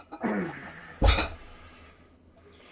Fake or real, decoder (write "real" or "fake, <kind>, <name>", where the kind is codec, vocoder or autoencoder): real